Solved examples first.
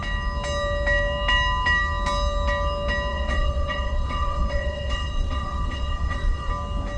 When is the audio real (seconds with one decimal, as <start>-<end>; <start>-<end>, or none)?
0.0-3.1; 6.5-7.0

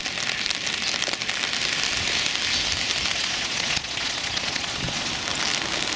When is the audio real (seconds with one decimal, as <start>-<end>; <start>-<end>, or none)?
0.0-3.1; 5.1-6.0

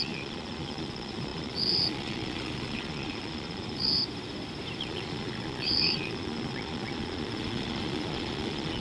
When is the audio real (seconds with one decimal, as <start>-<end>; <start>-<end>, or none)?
4.0-4.8

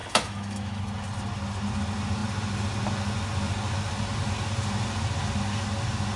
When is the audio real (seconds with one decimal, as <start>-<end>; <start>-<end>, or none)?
0.8-6.2